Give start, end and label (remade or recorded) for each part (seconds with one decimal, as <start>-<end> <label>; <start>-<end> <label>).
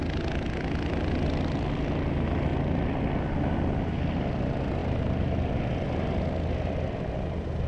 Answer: 0.0-7.7 recorded